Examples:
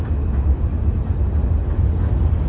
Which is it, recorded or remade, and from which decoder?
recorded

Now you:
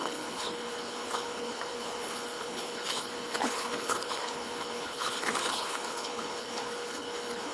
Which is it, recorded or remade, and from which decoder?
remade, codec, HILCodec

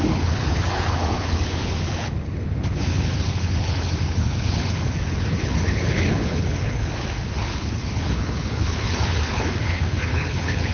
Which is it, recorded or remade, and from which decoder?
remade, codec, HILCodec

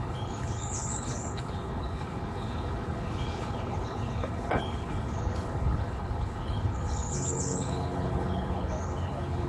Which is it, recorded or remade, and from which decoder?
remade, codec, HILCodec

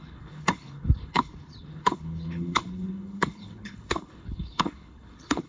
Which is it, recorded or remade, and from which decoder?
remade, codec, HILCodec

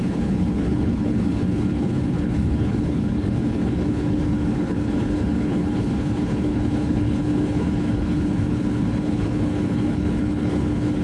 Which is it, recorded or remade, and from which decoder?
remade, codec, HILCodec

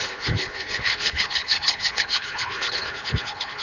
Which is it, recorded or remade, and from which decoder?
remade, codec, HILCodec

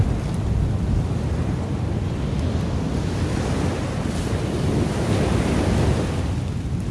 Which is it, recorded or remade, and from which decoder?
recorded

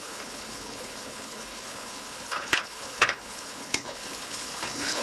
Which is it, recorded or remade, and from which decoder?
remade, codec, HILCodec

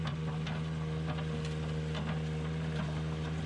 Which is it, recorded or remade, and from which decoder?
recorded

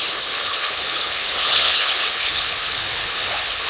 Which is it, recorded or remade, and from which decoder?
remade, codec, HILCodec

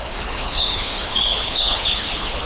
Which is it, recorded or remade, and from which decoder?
remade, codec, HILCodec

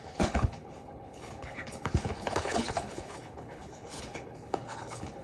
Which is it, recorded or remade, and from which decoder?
remade, codec, HILCodec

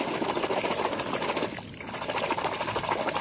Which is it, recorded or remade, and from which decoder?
recorded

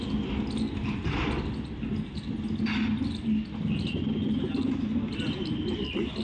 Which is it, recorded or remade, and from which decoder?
recorded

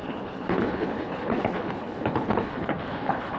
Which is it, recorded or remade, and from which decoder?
remade, codec, HILCodec